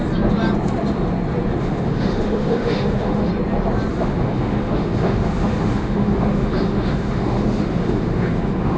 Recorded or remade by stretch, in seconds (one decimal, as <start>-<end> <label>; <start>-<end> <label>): 0.0-1.6 recorded; 1.6-3.3 remade; 3.3-3.9 recorded; 3.9-8.8 remade